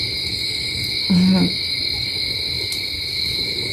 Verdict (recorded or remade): recorded